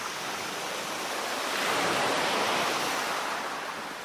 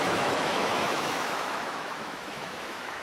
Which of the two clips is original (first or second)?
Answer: first